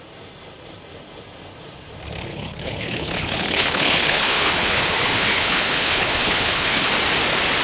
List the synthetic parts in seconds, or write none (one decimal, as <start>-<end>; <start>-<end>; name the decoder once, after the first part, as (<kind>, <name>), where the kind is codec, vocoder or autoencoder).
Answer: 2.3-6.9 (codec, HILCodec)

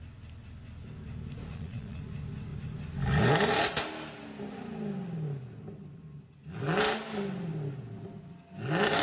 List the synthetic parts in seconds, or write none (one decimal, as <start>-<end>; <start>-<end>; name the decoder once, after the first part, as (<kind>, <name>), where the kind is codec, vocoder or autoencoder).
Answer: 1.5-2.0 (vocoder, Vocos)

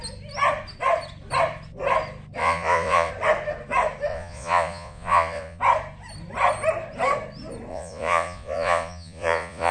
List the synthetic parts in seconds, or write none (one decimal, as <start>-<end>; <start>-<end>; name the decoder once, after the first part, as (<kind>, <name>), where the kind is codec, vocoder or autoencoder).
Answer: 2.4-3.1 (vocoder, Vocos); 4.1-5.6; 7.7-9.7

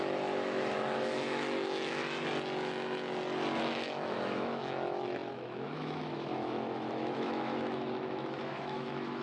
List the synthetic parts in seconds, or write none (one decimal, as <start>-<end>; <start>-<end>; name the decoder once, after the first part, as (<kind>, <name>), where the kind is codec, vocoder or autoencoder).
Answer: 0.0-2.0 (autoencoder, DAC-VAE); 3.6-9.2

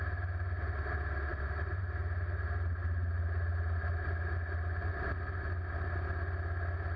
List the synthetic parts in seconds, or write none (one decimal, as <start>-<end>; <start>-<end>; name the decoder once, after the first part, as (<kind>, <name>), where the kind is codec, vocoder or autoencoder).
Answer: 1.3-1.8 (vocoder, BigVGAN v2)

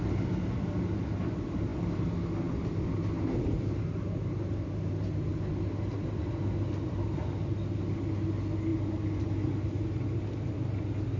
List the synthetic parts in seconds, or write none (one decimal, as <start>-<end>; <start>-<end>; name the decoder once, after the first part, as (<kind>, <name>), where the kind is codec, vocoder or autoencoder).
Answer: none